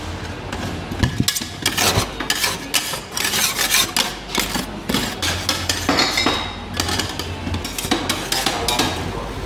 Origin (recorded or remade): recorded